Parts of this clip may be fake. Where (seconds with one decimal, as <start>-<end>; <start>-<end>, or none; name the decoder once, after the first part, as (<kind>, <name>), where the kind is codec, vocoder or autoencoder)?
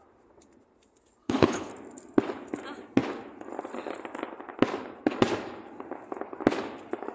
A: 1.2-1.7 (codec, HILCodec)